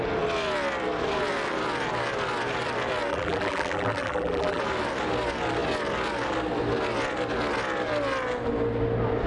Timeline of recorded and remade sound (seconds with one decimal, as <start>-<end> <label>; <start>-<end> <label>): 0.0-3.1 recorded; 3.1-4.6 remade; 4.6-9.3 recorded